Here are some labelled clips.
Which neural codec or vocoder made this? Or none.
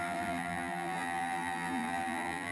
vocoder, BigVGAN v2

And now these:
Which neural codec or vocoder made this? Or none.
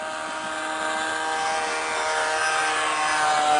none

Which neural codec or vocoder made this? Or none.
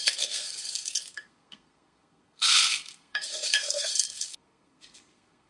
codec, SNAC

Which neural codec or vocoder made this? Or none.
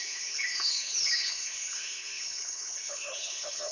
codec, HILCodec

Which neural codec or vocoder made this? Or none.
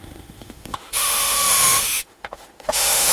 autoencoder, DAC-VAE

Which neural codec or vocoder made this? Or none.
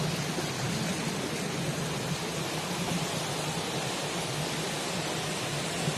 none